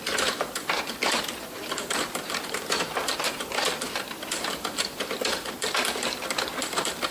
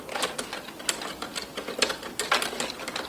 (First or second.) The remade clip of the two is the first